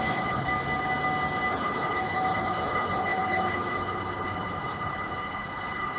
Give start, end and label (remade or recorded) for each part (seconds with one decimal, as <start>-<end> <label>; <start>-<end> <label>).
0.0-0.5 remade; 0.5-1.5 recorded; 1.5-6.0 remade